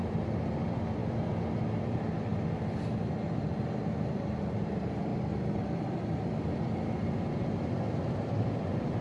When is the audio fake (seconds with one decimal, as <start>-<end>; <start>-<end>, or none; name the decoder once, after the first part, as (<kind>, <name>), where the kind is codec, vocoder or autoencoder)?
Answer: 0.0-1.0 (vocoder, BigVGAN v2); 1.5-2.3; 3.4-5.1; 5.7-9.0